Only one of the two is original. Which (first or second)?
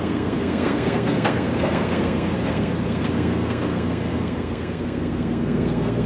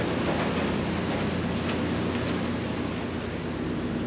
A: second